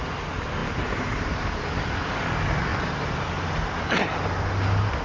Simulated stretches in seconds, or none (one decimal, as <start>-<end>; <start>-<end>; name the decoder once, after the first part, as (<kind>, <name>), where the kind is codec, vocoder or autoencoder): 0.6-1.6 (vocoder, BigVGAN v2); 2.7-4.2